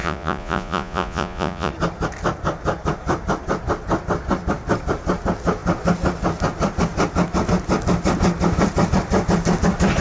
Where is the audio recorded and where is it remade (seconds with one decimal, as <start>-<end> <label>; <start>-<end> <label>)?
0.0-1.7 remade; 1.7-10.0 recorded